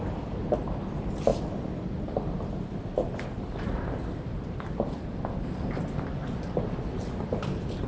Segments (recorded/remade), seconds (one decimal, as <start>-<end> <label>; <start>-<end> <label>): 0.0-7.9 recorded

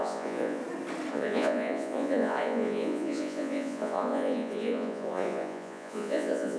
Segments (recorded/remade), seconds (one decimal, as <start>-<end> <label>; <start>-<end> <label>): 0.0-0.6 remade; 0.6-1.1 recorded; 1.1-6.6 remade

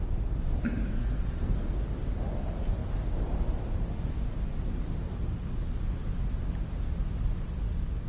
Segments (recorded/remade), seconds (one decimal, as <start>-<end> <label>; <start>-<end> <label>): 0.0-0.8 recorded; 0.8-1.8 remade; 1.8-8.1 recorded

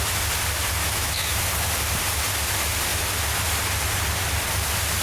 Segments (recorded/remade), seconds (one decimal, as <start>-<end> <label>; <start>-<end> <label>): 0.0-0.8 recorded; 0.8-1.4 remade; 1.4-5.0 recorded

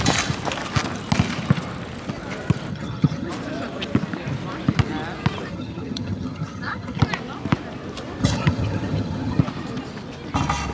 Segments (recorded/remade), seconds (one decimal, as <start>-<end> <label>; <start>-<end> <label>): 0.0-2.7 recorded; 2.7-3.3 remade; 3.3-5.5 recorded; 5.5-7.0 remade; 7.0-8.2 recorded; 8.2-9.4 remade; 9.4-10.7 recorded

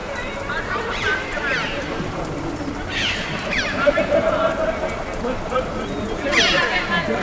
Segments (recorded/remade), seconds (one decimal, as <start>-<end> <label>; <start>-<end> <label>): 0.0-7.2 recorded

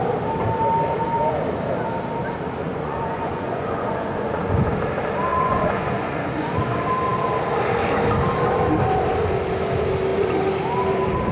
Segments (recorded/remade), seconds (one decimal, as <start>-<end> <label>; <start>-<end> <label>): 0.0-2.6 recorded; 2.6-4.7 remade; 4.7-5.3 recorded; 5.3-6.6 remade; 6.6-11.3 recorded